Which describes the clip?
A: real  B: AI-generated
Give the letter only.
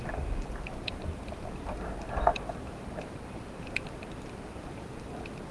A